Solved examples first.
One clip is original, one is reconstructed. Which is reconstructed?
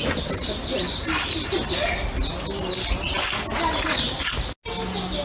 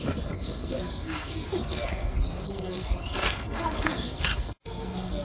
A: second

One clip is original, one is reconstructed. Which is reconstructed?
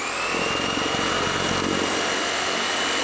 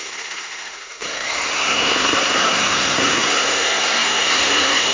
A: second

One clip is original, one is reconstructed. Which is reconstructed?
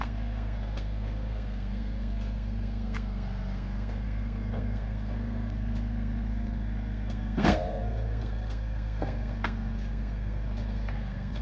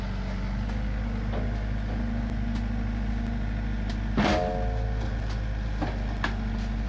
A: first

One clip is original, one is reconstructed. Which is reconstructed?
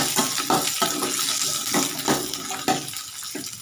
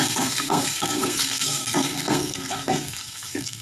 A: second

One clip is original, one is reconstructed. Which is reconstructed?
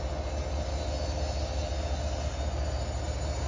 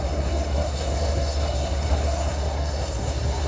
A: second